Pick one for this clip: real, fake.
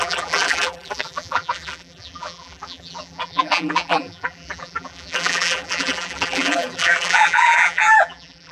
fake